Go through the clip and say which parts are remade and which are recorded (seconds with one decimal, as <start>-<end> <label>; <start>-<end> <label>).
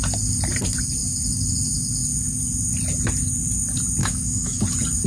0.0-4.0 recorded; 4.0-4.6 remade; 4.6-5.1 recorded